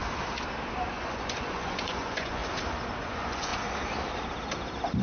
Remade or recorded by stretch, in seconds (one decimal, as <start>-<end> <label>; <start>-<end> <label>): 0.0-0.9 recorded; 0.9-2.4 remade; 2.4-3.0 recorded; 3.0-3.5 remade; 3.5-5.0 recorded